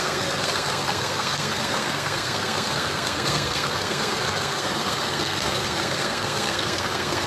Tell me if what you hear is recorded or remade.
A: remade